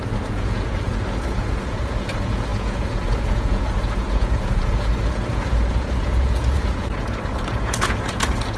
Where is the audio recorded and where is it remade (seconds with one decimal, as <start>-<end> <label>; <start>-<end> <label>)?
0.0-8.6 remade